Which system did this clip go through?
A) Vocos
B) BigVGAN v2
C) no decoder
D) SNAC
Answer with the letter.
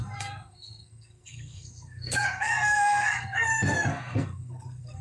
D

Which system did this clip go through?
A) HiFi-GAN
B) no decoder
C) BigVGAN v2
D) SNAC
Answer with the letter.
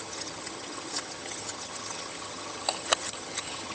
A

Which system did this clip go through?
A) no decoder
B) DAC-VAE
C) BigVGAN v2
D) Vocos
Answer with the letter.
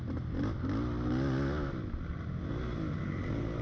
A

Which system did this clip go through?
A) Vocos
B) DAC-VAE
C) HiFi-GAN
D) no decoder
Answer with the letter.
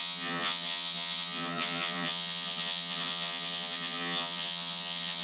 C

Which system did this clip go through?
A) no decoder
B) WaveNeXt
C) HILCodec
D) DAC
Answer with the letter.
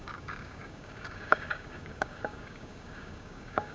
D